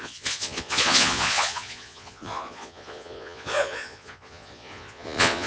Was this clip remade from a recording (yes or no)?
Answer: yes